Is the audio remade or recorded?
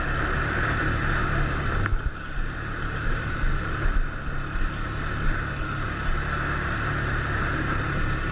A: recorded